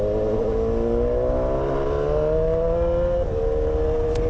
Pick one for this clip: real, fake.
real